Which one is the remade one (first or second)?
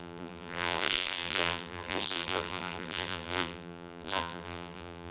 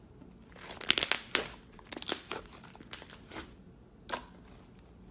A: first